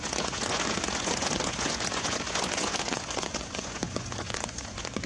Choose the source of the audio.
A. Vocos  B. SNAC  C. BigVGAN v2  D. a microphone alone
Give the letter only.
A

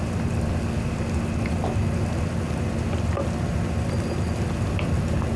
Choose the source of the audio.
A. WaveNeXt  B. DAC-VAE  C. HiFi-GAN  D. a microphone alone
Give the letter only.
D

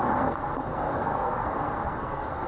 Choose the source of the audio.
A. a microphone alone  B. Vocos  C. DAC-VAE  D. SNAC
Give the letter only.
D